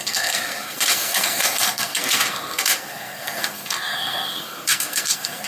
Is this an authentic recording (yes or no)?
no